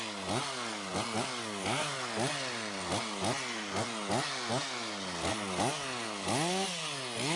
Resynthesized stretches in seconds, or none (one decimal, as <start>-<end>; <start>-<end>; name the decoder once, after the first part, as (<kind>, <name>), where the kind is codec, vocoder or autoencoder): none